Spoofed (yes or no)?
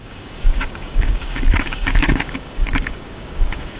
yes